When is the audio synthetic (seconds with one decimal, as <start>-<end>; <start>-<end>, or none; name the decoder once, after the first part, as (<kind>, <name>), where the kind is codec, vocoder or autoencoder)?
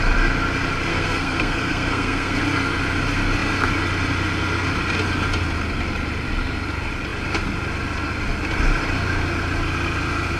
0.9-2.4 (codec, SNAC)